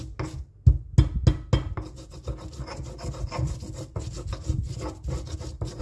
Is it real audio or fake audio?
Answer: real